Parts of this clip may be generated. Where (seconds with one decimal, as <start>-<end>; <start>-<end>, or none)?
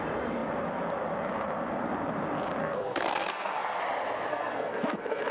2.6-3.8; 4.3-5.3